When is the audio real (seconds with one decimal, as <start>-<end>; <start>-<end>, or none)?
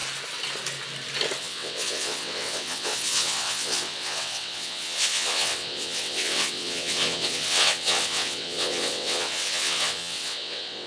0.0-1.4